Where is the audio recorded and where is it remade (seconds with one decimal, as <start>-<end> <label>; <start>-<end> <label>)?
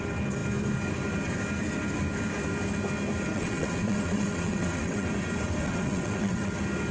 0.0-3.3 recorded; 3.3-5.1 remade; 5.1-5.6 recorded; 5.6-6.5 remade; 6.5-6.9 recorded